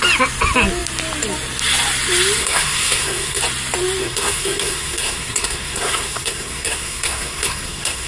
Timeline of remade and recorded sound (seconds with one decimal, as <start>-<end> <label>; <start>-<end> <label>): 0.0-2.4 recorded; 2.4-3.4 remade; 3.4-4.0 recorded; 4.0-8.1 remade